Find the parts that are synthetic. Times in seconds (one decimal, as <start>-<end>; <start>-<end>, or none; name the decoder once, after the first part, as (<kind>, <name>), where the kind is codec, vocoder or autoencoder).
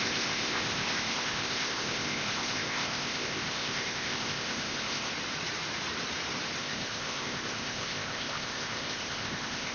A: 0.0-5.1 (codec, ZipCodec); 6.6-9.7